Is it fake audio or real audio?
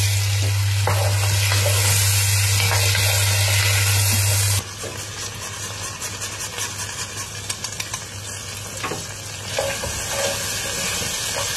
real